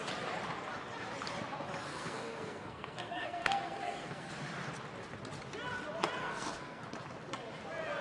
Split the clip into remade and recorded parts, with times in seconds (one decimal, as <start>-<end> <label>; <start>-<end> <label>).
0.0-1.9 recorded; 1.9-4.3 remade; 4.3-6.2 recorded; 6.2-6.8 remade; 6.8-8.0 recorded

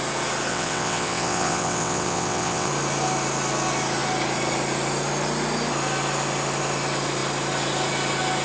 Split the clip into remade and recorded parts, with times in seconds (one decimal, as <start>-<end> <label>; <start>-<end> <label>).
0.0-0.5 recorded; 0.5-2.7 remade; 2.7-8.4 recorded

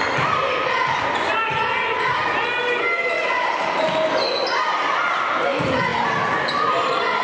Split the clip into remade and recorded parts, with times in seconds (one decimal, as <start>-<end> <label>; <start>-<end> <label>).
0.0-7.2 recorded

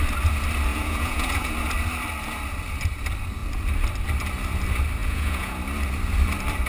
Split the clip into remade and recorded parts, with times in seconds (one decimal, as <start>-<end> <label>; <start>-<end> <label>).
0.0-0.7 recorded; 0.7-1.5 remade; 1.5-5.0 recorded; 5.0-5.6 remade; 5.6-6.7 recorded